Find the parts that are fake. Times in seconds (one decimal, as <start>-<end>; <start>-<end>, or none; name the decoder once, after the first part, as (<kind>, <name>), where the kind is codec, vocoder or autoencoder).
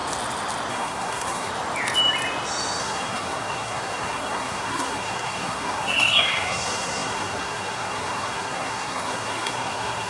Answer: 0.7-1.5 (codec, SNAC); 2.8-10.1